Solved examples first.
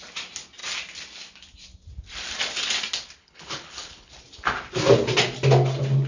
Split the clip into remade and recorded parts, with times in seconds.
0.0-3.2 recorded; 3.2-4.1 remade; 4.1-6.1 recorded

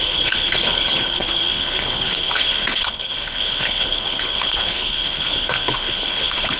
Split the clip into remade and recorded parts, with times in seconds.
0.0-6.6 remade

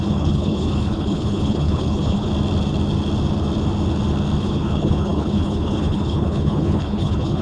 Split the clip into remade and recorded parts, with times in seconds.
0.0-2.3 remade; 2.3-4.4 recorded; 4.4-7.4 remade